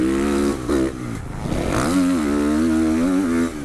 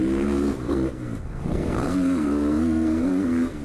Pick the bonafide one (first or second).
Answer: first